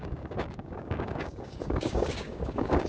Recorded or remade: remade